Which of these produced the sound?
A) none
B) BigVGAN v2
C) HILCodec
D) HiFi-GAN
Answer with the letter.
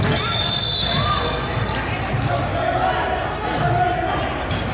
A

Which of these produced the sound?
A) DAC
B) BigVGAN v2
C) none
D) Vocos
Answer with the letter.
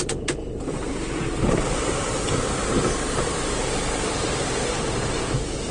B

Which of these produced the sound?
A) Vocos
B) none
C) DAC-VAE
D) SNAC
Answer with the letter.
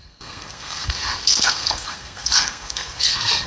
D